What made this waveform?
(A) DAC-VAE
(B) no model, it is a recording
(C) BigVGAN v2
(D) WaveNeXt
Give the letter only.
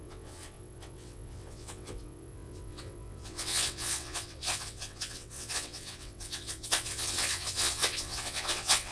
D